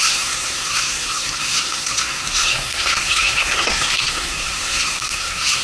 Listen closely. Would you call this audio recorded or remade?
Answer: remade